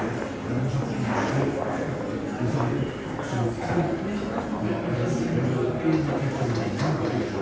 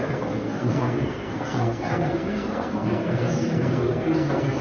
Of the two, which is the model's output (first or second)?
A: second